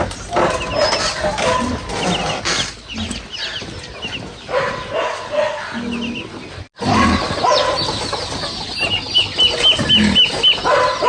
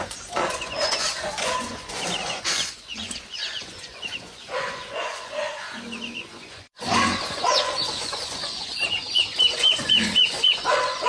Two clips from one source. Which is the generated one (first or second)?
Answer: second